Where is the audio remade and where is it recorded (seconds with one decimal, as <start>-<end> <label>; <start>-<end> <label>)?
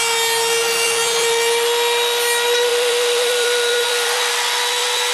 0.0-2.7 recorded; 2.7-4.3 remade; 4.3-5.1 recorded